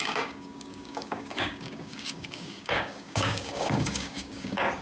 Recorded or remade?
remade